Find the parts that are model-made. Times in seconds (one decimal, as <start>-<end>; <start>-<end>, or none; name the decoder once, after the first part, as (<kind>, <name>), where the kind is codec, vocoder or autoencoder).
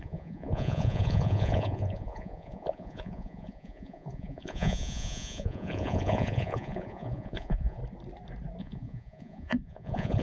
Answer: 0.0-7.8 (vocoder, Vocos); 8.6-10.2